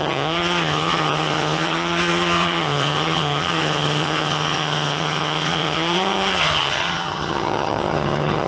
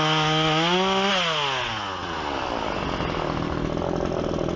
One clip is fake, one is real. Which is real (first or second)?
second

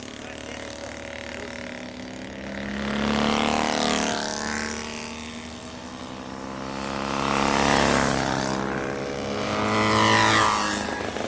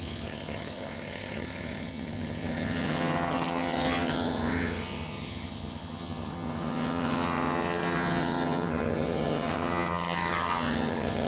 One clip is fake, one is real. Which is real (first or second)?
first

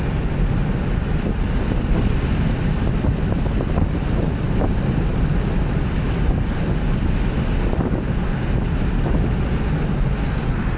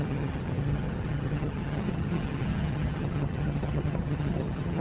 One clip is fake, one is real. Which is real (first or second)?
first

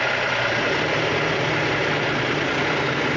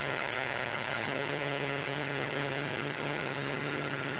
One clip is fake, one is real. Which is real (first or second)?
first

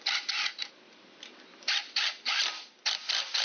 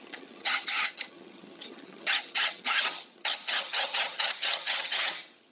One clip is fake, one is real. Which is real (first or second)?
first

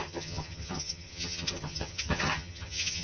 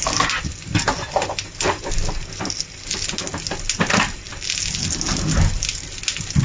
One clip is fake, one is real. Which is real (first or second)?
second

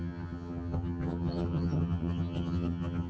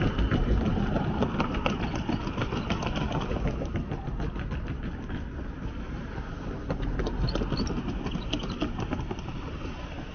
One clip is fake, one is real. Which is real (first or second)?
second